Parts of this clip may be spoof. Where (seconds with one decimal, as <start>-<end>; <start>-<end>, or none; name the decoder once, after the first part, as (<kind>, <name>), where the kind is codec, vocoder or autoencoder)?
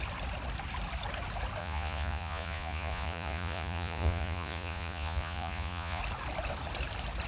1.6-6.0 (vocoder, Vocos)